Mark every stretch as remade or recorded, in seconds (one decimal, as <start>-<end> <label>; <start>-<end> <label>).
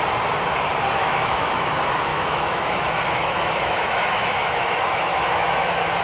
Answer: 0.0-1.0 recorded; 1.0-1.7 remade; 1.7-2.1 recorded; 2.1-6.0 remade